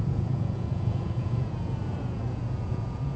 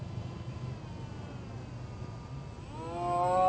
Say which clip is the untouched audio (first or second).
second